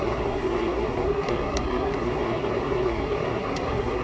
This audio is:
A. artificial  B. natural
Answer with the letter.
A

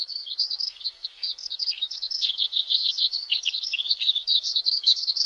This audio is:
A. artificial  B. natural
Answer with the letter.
A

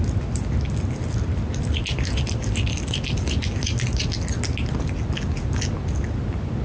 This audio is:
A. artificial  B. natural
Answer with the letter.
B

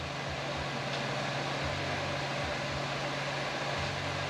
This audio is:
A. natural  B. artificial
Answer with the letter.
A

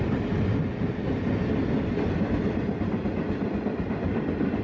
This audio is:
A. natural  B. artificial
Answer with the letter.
A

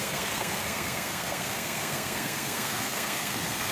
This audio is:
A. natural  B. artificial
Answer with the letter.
B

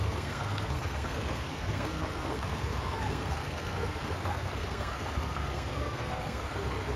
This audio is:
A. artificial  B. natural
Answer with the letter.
A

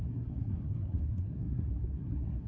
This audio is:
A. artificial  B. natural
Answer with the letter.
A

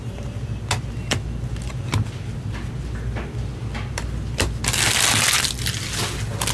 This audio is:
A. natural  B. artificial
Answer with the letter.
A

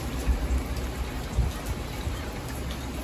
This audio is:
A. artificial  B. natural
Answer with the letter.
B